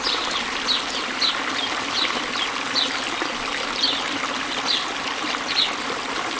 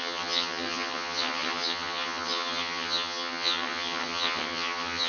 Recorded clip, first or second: first